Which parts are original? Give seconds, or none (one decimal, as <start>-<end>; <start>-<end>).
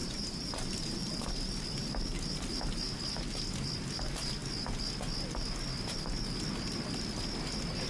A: 1.3-7.9